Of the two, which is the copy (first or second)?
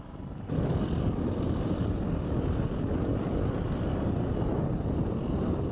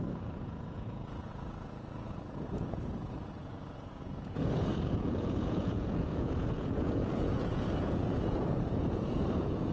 second